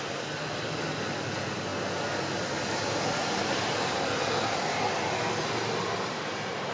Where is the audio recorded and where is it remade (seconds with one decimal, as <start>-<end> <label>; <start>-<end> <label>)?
0.0-6.7 recorded